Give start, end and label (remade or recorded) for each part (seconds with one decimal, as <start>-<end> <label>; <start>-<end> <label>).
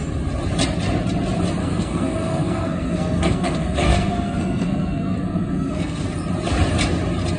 0.0-1.6 recorded; 1.6-6.0 remade; 6.0-7.4 recorded